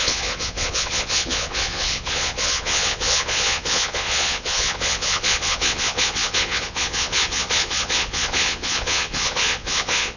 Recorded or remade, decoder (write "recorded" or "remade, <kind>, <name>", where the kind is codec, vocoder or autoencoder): remade, vocoder, Vocos